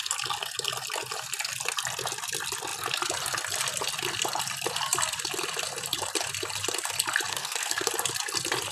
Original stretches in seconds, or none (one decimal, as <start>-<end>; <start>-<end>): 0.0-7.3; 7.9-8.7